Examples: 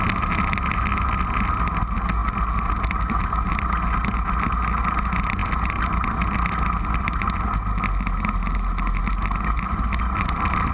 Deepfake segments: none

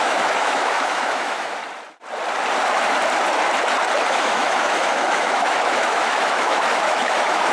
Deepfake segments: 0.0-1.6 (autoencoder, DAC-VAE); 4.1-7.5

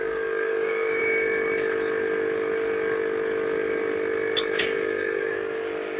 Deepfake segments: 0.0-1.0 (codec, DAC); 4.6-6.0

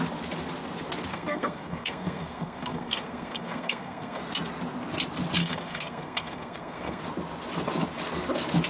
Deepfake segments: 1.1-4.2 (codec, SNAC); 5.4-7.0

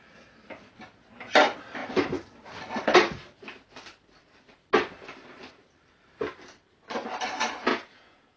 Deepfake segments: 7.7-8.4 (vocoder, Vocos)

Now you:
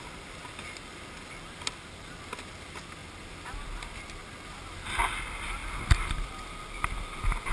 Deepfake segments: none

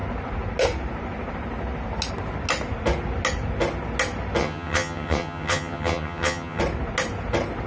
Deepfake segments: 4.4-6.6 (vocoder, HiFi-GAN)